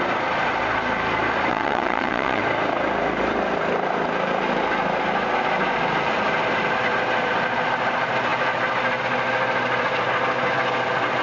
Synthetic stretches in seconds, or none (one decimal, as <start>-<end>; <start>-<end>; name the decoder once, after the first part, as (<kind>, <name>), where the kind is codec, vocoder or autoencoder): 1.5-2.4 (vocoder, WaveNeXt)